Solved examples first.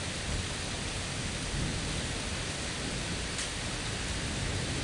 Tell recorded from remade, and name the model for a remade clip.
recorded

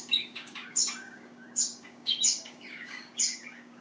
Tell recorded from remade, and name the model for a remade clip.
remade, codec, DAC